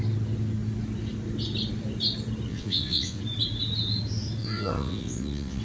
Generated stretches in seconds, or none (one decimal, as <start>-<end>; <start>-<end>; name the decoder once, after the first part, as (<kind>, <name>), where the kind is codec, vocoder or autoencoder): 2.5-3.2 (vocoder, WaveNeXt); 4.4-5.6